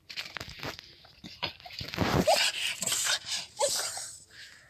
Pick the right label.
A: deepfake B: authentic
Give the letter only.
A